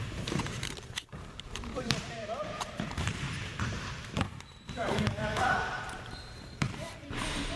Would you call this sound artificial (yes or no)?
yes